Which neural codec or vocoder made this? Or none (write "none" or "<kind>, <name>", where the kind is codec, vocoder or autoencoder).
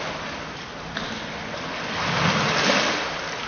none